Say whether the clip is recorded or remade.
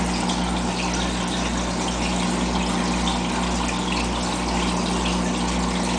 recorded